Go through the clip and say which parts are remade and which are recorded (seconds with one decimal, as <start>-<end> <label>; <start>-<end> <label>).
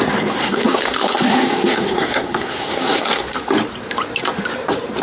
0.0-0.4 recorded; 0.4-3.4 remade; 3.4-5.0 recorded